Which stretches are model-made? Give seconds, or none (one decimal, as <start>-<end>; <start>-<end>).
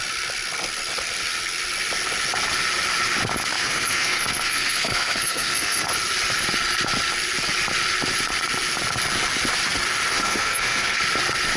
3.5-5.9; 10.1-11.0